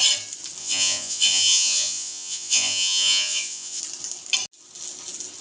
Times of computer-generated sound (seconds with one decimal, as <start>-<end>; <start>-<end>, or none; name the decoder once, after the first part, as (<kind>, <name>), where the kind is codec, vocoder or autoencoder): 0.6-3.8 (vocoder, Vocos)